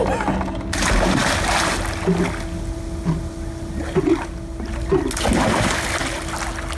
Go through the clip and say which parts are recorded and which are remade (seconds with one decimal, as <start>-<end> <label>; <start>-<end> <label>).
0.0-6.8 recorded